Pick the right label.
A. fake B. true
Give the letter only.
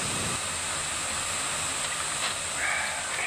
B